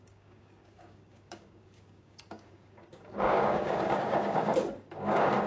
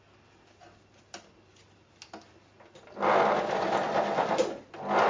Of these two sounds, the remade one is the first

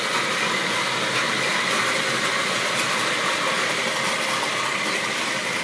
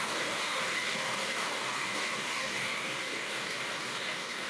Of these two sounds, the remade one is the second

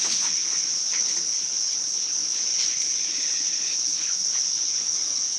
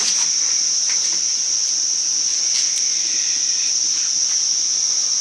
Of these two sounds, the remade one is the first